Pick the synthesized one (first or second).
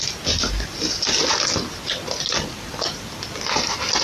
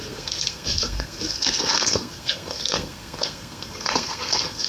second